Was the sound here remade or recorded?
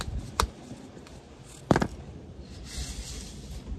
recorded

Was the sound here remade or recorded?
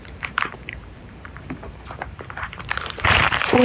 remade